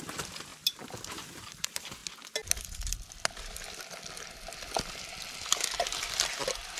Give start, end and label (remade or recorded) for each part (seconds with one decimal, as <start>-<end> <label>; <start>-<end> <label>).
0.0-2.0 remade; 2.0-6.1 recorded; 6.1-6.8 remade